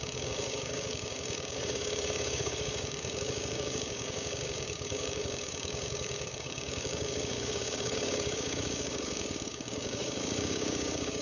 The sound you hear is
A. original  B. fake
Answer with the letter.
B